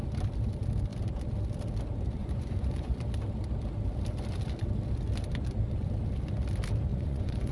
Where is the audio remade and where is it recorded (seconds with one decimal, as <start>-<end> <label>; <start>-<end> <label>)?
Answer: 0.0-2.2 recorded; 2.2-3.0 remade; 3.0-6.9 recorded; 6.9-7.5 remade